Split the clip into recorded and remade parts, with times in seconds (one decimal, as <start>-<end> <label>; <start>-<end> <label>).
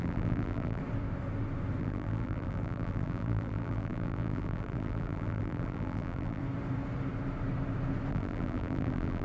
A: 0.0-0.8 remade; 0.8-1.8 recorded; 1.8-6.4 remade; 6.4-8.1 recorded; 8.1-9.2 remade